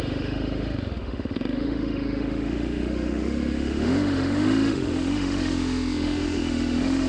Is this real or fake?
fake